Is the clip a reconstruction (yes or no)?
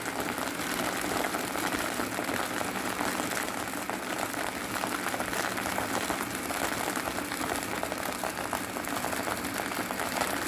no